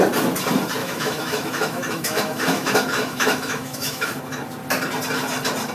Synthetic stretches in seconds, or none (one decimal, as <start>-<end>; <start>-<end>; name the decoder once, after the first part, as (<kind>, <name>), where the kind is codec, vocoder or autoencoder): 0.8-4.2 (autoencoder, DAC-VAE)